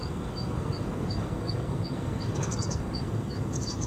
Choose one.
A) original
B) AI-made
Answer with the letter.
B